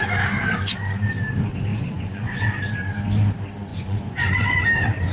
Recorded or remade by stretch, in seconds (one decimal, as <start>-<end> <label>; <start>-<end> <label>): 0.0-1.7 recorded; 1.7-2.4 remade; 2.4-3.7 recorded; 3.7-4.6 remade; 4.6-5.1 recorded